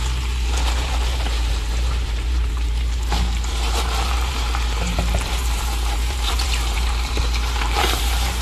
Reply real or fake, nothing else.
fake